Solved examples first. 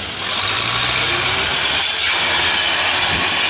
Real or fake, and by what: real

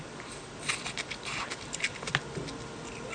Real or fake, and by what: real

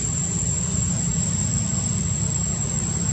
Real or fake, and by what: real